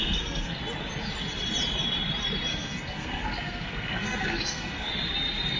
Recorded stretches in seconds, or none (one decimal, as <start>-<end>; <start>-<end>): 0.6-2.5; 4.9-5.6